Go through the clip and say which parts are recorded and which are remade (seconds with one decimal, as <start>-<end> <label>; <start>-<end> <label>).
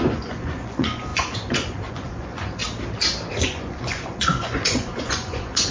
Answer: 0.0-2.6 remade; 2.6-3.4 recorded; 3.4-5.7 remade